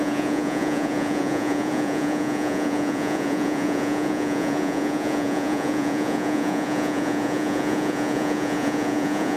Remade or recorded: remade